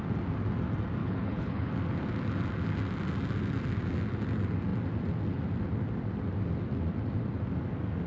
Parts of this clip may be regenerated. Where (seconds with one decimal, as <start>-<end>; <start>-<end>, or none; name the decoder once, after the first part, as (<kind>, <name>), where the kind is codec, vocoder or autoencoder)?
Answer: 1.0-1.7 (codec, HILCodec)